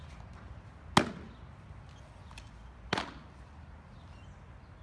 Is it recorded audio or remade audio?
recorded